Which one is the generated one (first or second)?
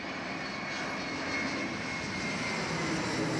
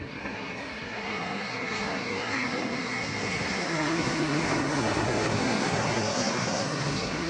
second